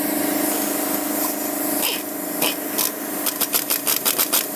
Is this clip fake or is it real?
real